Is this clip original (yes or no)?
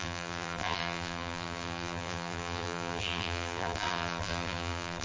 no